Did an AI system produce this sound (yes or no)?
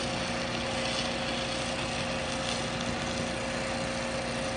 no